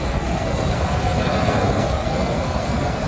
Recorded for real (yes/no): no